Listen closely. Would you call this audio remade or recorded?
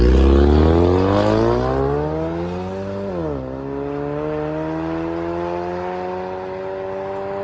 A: recorded